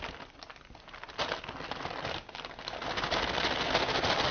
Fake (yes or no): no